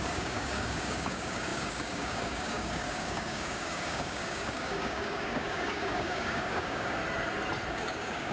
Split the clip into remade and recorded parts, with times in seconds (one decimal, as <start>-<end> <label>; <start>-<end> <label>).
0.0-7.0 remade; 7.0-7.7 recorded; 7.7-8.3 remade